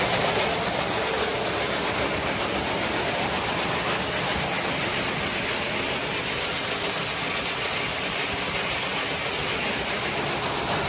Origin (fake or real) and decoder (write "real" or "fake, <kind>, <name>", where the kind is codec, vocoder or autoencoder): real